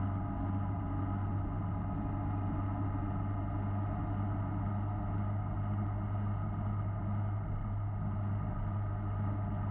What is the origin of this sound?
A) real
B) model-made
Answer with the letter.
A